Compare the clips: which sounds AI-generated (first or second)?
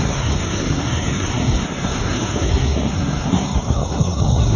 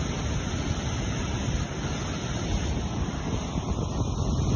first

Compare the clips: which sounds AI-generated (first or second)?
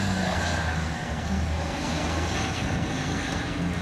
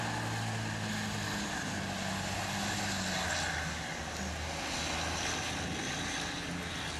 first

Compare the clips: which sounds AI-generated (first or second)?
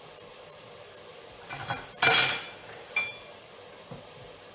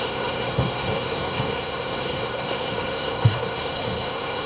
second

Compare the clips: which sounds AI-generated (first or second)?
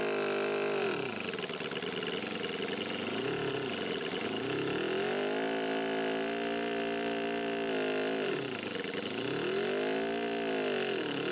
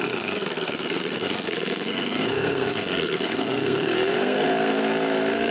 second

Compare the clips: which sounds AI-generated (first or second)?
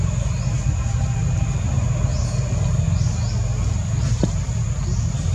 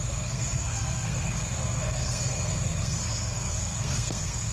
second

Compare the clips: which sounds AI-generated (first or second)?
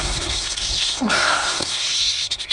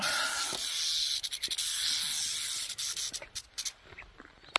first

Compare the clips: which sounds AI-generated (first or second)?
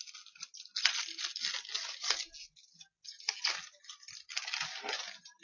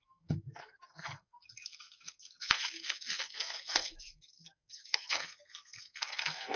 second